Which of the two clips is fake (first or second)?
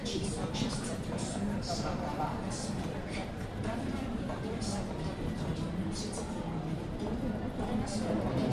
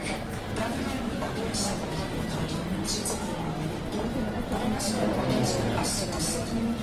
first